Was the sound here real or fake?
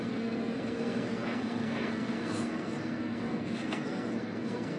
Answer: fake